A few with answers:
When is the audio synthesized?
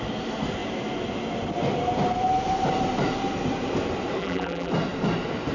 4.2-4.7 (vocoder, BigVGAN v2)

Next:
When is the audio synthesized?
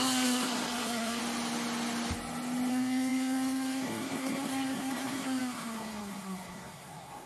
0.0-1.2 (codec, SNAC); 2.7-7.3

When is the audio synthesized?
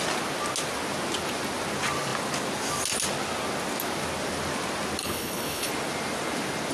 5.0-5.7 (codec, HILCodec)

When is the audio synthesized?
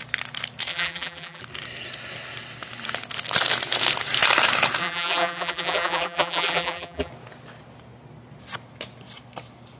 0.7-1.4 (vocoder, BigVGAN v2); 4.8-7.1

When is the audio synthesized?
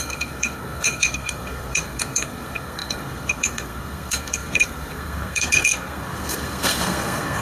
0.0-7.4 (codec, SNAC)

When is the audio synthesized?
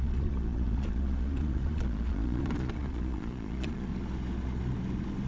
0.0-3.9 (vocoder, Vocos)